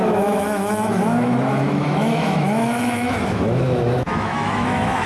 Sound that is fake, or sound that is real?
fake